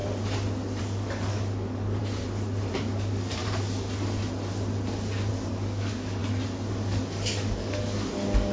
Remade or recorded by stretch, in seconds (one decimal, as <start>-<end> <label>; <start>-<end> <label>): 0.0-0.8 recorded; 0.8-2.0 remade; 2.0-2.7 recorded; 2.7-3.4 remade; 3.4-5.3 recorded; 5.3-6.2 remade; 6.2-6.7 recorded; 6.7-8.5 remade